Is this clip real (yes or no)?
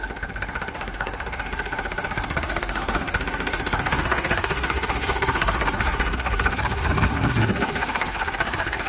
no